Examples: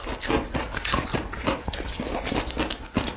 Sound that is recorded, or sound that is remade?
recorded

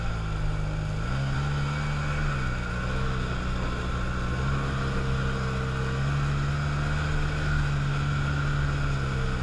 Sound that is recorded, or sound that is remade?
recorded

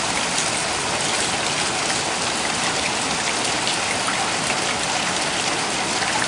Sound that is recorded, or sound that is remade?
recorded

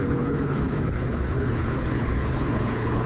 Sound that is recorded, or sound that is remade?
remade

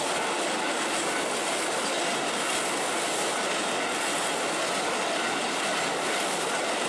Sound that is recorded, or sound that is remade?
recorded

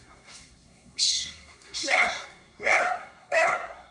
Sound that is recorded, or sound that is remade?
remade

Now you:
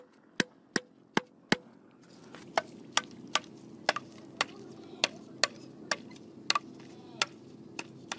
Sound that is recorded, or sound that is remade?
recorded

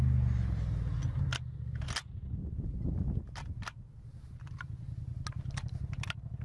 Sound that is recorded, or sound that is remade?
recorded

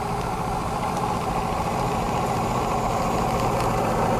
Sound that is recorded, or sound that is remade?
recorded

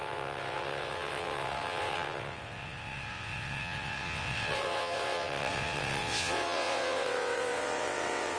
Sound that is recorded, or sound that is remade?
remade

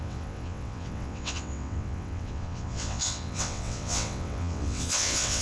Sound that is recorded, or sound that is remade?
remade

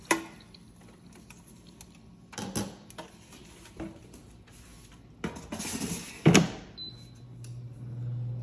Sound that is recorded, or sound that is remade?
recorded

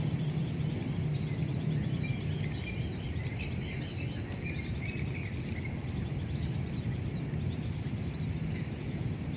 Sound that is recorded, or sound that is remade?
recorded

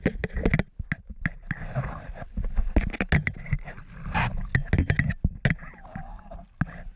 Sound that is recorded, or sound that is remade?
recorded